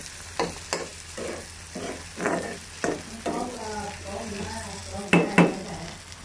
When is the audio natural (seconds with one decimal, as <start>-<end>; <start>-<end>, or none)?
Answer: 2.6-3.5; 4.8-6.2